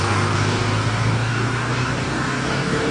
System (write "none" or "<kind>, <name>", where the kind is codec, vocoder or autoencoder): codec, DAC